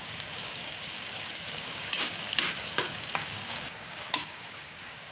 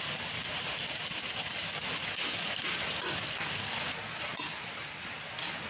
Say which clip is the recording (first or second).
second